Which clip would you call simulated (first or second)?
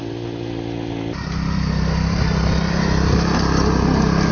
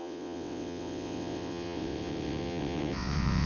second